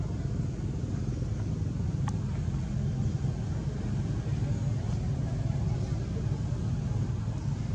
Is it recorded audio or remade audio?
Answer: recorded